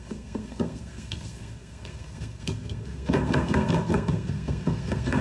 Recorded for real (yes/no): no